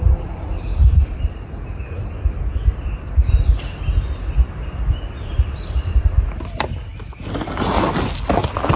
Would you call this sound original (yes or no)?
yes